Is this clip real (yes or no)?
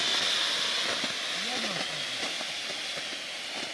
yes